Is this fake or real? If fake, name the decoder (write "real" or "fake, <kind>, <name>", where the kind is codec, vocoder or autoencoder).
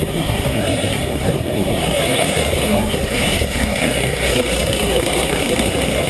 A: fake, codec, SNAC